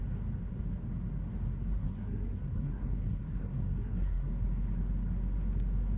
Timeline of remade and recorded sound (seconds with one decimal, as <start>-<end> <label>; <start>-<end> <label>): 0.0-1.7 recorded; 1.7-4.3 remade; 4.3-6.0 recorded